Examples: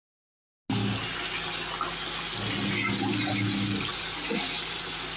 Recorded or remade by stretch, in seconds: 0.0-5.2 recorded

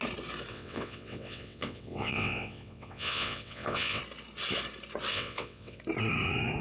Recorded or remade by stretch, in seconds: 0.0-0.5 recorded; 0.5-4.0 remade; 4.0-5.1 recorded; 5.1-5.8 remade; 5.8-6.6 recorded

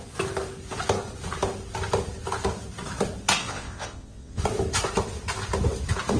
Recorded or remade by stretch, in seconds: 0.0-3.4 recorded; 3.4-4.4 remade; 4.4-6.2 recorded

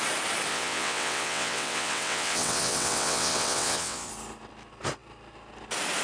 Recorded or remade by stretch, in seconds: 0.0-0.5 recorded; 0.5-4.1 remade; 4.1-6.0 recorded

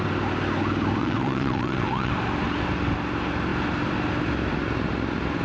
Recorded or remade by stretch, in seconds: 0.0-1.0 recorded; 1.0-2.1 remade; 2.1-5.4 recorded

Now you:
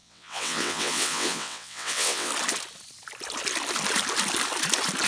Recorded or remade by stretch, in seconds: 0.0-2.3 remade; 2.3-5.1 recorded